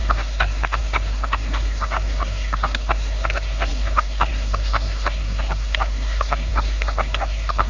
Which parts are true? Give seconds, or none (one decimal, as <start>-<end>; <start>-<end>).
none